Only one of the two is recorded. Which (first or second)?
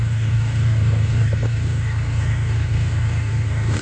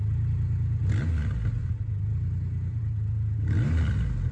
second